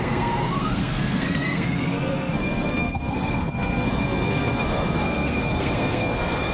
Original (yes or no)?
no